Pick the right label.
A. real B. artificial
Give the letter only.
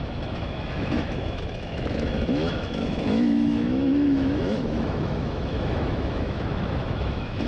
B